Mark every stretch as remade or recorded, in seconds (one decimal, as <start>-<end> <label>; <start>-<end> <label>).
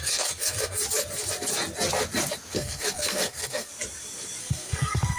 0.0-0.8 remade; 0.8-2.5 recorded; 2.5-3.7 remade; 3.7-4.4 recorded; 4.4-5.2 remade